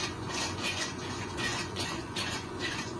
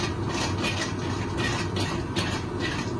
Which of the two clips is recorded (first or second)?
second